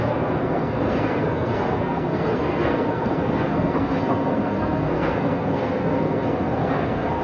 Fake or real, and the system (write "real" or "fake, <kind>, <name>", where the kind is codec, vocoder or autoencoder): fake, codec, SNAC